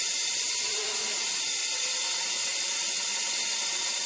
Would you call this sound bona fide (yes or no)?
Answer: yes